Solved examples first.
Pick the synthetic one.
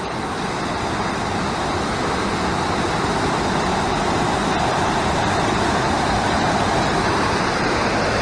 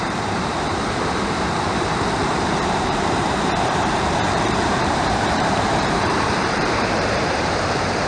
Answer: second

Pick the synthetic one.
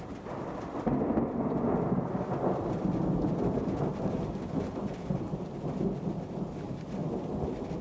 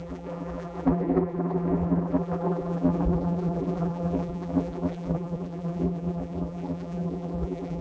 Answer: second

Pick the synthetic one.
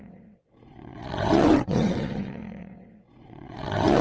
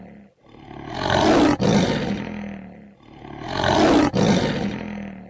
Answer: first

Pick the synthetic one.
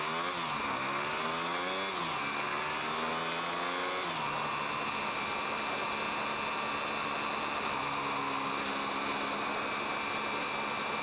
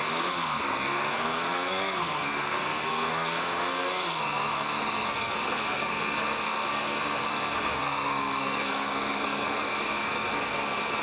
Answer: second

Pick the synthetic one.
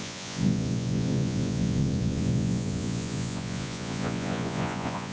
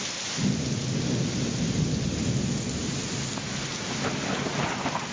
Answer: first